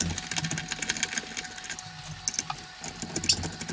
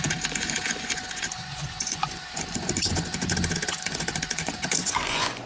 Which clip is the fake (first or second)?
second